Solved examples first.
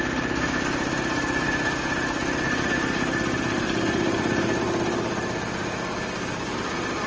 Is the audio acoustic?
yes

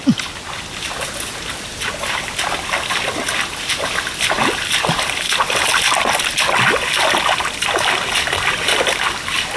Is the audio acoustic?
yes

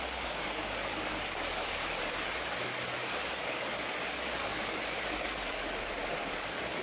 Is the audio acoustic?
no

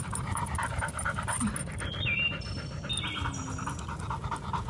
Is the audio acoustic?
yes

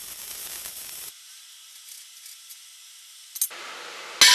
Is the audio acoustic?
yes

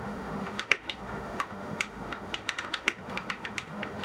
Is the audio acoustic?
no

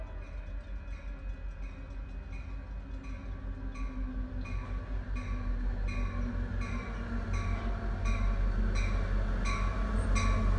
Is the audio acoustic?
yes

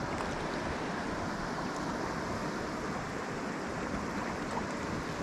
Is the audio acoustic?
yes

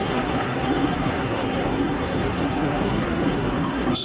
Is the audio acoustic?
no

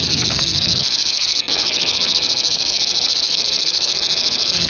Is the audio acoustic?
no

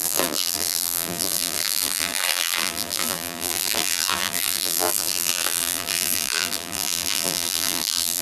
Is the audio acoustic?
no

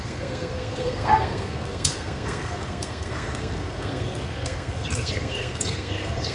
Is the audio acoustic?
no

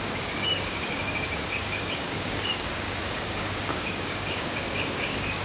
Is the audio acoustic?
no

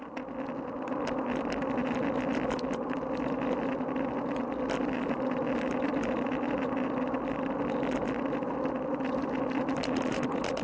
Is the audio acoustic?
yes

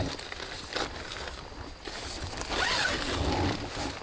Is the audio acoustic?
yes